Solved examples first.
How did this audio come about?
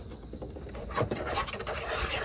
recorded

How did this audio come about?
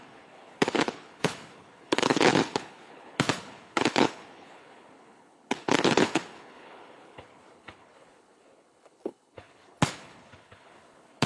remade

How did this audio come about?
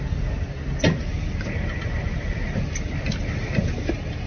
recorded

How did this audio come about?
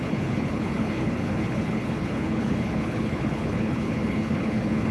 remade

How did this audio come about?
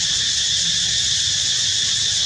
recorded